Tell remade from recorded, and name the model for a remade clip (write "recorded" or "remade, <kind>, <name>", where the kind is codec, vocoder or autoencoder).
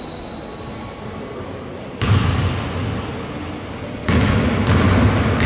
recorded